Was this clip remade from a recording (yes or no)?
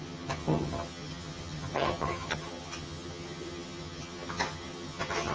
yes